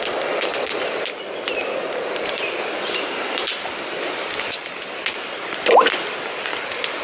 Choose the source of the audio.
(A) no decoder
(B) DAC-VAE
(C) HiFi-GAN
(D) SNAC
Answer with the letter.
A